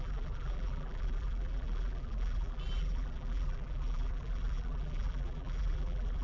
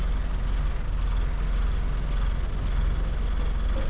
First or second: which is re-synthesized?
first